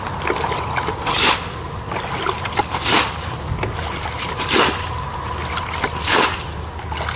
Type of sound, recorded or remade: recorded